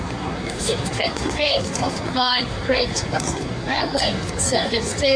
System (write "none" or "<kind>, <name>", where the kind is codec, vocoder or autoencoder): codec, SNAC